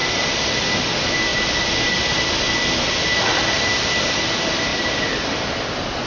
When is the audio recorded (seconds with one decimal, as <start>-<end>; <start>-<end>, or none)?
0.0-1.3; 4.2-4.7